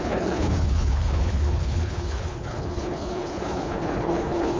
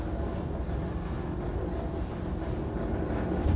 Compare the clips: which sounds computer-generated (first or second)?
first